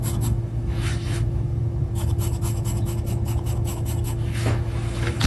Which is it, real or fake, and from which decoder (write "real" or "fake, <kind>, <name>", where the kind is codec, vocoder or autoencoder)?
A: fake, autoencoder, DAC-VAE